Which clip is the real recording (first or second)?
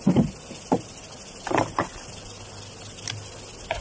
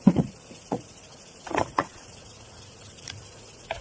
first